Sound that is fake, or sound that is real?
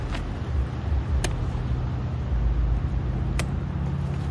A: real